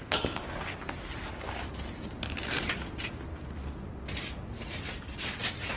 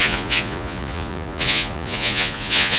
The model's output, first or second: second